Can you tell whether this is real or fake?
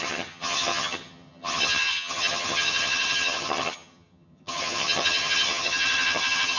fake